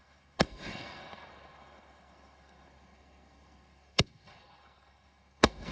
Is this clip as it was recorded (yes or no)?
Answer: no